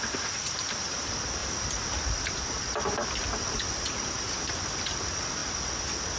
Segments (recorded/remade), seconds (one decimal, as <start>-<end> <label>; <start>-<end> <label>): 0.0-6.2 recorded